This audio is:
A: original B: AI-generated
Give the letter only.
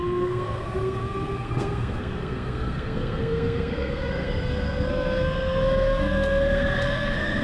B